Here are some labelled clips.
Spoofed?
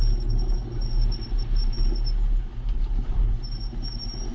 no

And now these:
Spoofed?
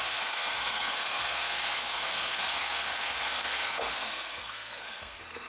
yes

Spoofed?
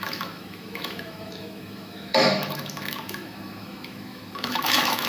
yes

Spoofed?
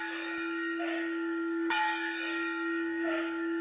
yes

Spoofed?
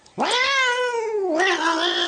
no